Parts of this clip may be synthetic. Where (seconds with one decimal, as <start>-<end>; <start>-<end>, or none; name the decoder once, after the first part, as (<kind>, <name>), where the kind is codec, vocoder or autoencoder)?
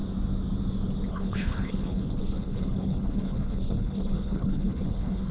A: 1.1-5.3 (codec, HILCodec)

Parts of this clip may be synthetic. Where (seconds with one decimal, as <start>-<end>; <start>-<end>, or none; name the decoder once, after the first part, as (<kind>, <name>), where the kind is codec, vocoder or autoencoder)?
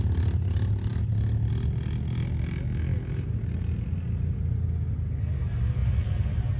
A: none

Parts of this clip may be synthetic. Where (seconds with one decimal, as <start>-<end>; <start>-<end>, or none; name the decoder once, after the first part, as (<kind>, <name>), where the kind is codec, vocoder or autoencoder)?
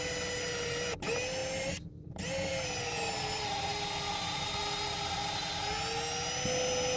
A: none